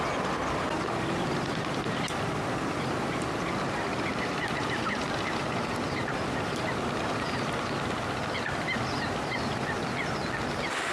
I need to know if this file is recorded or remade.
recorded